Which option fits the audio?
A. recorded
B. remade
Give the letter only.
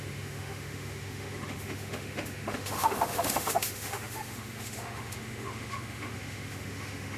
B